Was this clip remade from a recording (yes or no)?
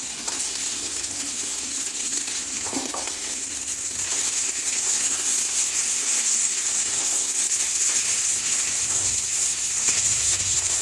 yes